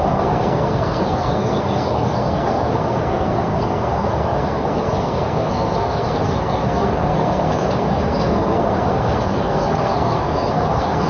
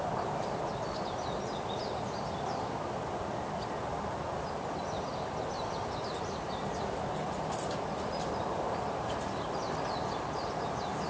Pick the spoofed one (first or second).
first